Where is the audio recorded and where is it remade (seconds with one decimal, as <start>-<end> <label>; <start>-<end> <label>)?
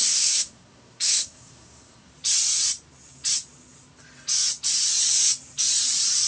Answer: 0.0-2.1 remade; 2.1-6.3 recorded